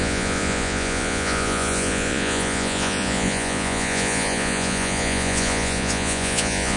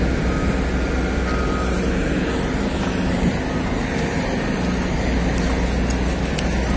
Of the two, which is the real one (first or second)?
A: second